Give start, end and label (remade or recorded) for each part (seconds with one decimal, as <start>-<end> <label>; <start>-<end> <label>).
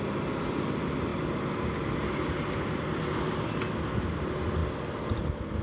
0.0-5.6 recorded